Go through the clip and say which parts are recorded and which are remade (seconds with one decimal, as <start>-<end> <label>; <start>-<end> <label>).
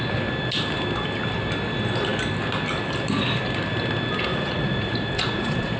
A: 0.0-4.3 recorded; 4.3-5.8 remade